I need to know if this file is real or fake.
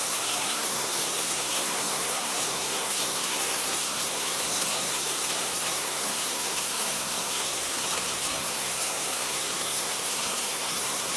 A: fake